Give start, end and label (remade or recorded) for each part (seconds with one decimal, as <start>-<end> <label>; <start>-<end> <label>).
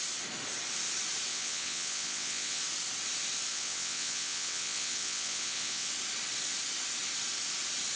0.0-1.3 recorded; 1.3-2.6 remade; 2.6-3.5 recorded; 3.5-5.9 remade; 5.9-8.0 recorded